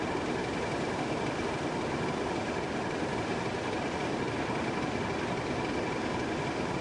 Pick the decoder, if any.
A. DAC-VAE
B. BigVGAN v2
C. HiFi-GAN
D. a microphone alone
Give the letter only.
D